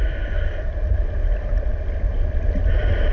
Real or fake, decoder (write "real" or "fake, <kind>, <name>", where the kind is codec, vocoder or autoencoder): real